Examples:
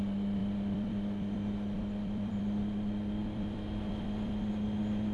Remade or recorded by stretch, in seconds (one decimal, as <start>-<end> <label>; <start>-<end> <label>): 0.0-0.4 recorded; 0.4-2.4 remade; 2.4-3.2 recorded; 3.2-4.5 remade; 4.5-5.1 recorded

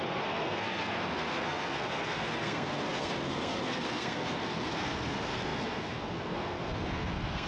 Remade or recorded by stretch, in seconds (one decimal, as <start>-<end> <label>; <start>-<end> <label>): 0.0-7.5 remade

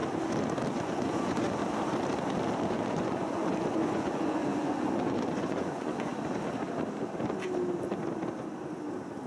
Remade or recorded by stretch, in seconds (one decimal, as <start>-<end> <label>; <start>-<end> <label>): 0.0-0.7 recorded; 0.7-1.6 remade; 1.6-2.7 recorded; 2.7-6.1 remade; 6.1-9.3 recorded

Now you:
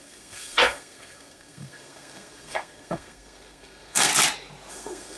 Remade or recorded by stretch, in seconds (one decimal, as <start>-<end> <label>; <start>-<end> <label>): 0.0-4.1 remade; 4.1-4.7 recorded; 4.7-5.2 remade

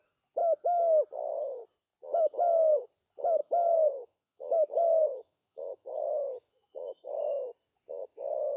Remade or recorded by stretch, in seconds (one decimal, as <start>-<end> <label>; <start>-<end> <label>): 0.0-3.4 recorded; 3.4-7.2 remade; 7.2-8.6 recorded

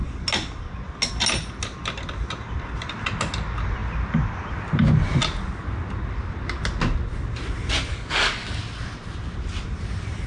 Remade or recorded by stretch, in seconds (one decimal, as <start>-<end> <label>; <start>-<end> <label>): 0.0-7.9 recorded; 7.9-8.6 remade; 8.6-10.3 recorded

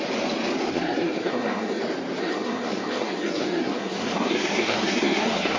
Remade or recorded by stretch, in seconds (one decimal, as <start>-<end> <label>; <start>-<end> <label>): 0.0-0.7 recorded; 0.7-1.8 remade; 1.8-2.2 recorded; 2.2-5.6 remade

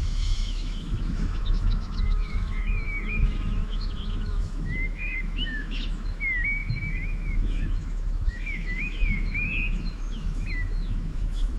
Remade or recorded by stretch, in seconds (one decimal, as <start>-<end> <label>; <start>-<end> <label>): 0.0-11.6 remade